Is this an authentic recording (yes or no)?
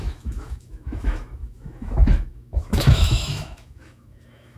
no